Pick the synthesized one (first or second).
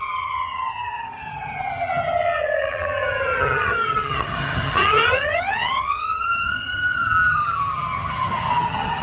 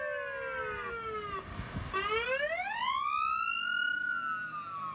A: first